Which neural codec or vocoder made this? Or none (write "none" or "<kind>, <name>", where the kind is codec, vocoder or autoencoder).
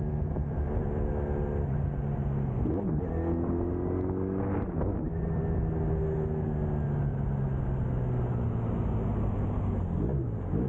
none